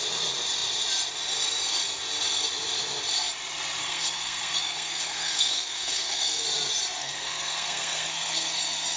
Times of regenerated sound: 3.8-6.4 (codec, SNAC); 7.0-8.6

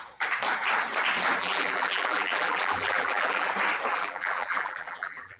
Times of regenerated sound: 1.4-3.5 (vocoder, BigVGAN v2); 3.9-5.4

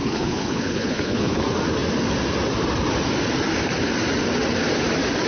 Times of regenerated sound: 0.0-1.4 (codec, HILCodec)

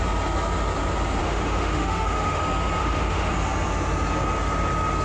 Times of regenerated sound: 1.2-2.4 (autoencoder, DAC-VAE); 2.8-3.3

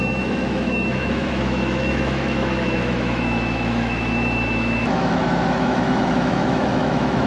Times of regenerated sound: 0.0-7.3 (autoencoder, DAC-VAE)

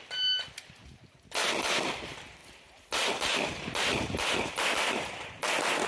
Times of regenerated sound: none